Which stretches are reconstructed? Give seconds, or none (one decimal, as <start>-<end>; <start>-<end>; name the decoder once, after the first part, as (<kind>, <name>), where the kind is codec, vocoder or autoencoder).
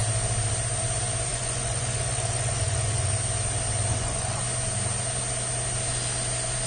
1.3-3.1 (vocoder, Vocos); 3.9-4.4